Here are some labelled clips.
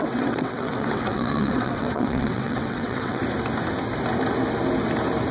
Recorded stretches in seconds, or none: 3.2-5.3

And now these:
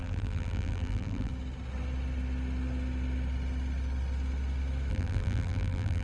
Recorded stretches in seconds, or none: 1.3-4.9

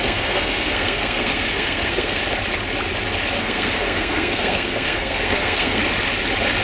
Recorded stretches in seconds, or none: 2.2-3.4; 5.8-6.6

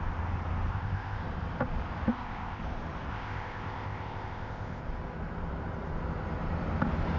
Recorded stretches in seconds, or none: 0.0-0.7; 1.2-2.1; 2.6-3.1; 4.8-7.2

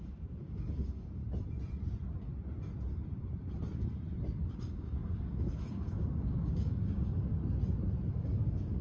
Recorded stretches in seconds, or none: 1.2-4.6; 7.4-8.1